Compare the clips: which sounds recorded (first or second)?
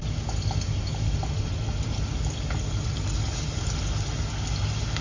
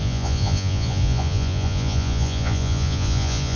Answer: first